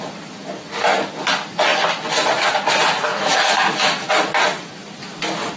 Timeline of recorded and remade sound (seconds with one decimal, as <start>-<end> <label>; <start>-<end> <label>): 0.0-3.1 recorded; 3.1-4.1 remade; 4.1-5.6 recorded